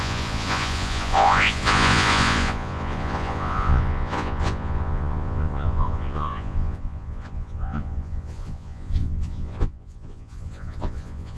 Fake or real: fake